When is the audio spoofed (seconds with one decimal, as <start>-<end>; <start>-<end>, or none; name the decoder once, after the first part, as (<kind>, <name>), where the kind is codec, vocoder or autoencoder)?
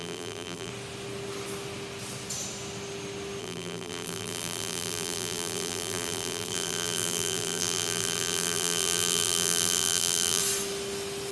0.0-0.7 (vocoder, BigVGAN v2); 3.4-10.4